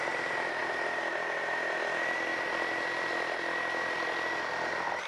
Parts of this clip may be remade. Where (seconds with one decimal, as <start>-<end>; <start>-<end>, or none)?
2.3-3.9